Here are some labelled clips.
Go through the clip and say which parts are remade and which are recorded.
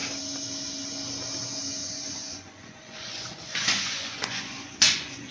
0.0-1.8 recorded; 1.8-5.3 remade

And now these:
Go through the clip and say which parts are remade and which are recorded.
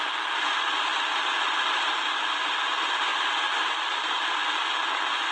0.0-0.9 recorded; 0.9-2.4 remade; 2.4-3.1 recorded; 3.1-3.8 remade; 3.8-5.3 recorded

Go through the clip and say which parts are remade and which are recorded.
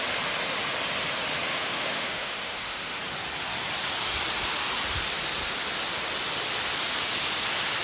0.0-1.5 recorded; 1.5-3.0 remade; 3.0-7.8 recorded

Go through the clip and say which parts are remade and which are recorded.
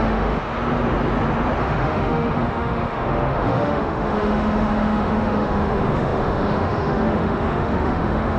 0.0-0.4 remade; 0.4-1.6 recorded; 1.6-8.4 remade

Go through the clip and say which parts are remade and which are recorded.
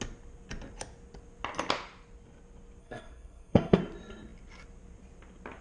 0.0-2.8 recorded; 2.8-3.8 remade; 3.8-5.6 recorded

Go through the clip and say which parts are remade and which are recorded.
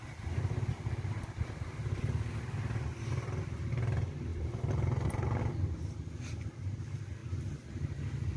0.0-8.4 recorded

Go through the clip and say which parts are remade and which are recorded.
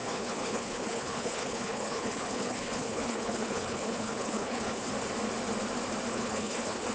0.0-4.9 remade; 4.9-6.1 recorded; 6.1-6.9 remade